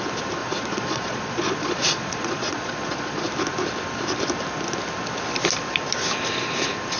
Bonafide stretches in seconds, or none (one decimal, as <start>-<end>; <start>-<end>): 0.0-0.4; 3.3-7.0